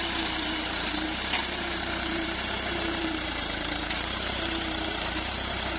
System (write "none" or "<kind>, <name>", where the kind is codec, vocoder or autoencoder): vocoder, BigVGAN v2